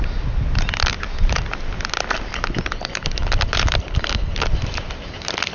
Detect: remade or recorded recorded